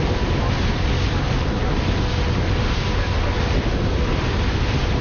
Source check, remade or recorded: recorded